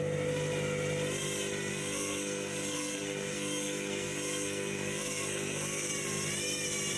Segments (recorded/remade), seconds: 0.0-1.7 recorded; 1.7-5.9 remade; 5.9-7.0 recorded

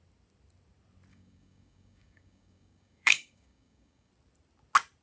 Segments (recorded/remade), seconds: 0.0-1.1 recorded; 1.1-4.1 remade; 4.1-5.0 recorded

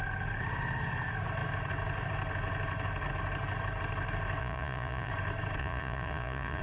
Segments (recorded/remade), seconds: 0.0-4.4 recorded; 4.4-5.1 remade; 5.1-5.6 recorded; 5.6-6.6 remade

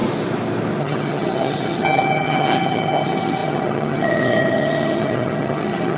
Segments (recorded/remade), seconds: 0.0-0.8 recorded; 0.8-6.0 remade